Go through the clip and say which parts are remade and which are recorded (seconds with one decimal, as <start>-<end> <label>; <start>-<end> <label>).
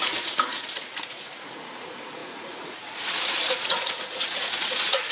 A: 0.0-5.1 remade